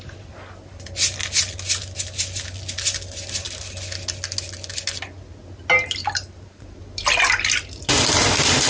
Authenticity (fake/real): real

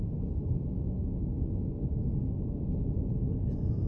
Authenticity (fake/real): real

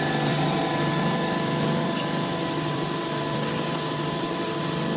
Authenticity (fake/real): fake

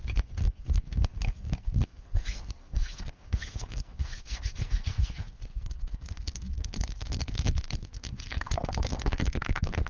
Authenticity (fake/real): fake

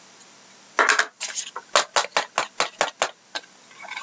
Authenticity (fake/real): real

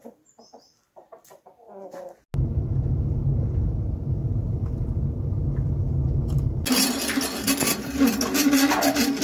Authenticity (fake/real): real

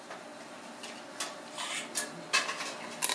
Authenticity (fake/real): real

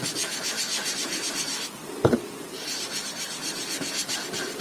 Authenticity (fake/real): real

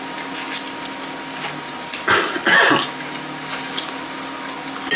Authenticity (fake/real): real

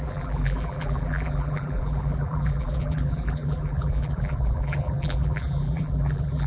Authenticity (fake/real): fake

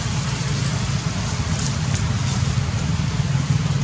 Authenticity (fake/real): real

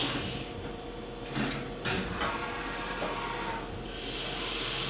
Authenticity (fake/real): real